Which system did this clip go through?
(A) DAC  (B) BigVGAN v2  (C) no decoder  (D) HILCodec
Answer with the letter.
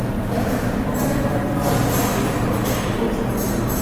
C